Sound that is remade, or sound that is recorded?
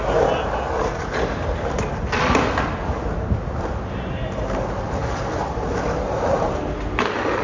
recorded